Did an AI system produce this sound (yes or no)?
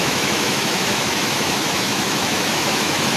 yes